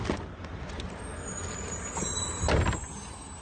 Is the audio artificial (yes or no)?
no